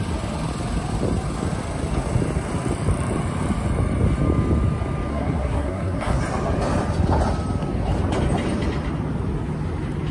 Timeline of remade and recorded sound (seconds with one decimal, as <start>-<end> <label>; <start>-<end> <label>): 0.0-5.1 recorded; 5.1-6.2 remade; 6.2-10.1 recorded